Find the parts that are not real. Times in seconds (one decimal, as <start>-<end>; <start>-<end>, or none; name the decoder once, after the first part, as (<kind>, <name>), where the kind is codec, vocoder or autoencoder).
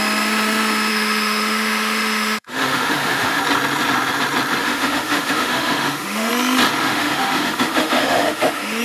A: 0.9-3.4 (autoencoder, DAC-VAE); 4.6-6.3; 6.8-8.8